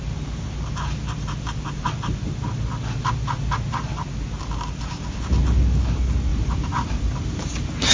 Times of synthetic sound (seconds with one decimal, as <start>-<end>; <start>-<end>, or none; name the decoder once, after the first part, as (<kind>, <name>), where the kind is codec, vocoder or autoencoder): 6.3-7.9 (vocoder, BigVGAN v2)